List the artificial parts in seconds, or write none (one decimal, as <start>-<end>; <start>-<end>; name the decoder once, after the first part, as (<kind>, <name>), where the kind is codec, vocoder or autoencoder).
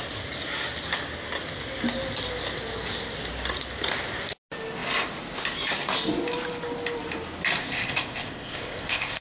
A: 7.6-9.2 (codec, ZipCodec)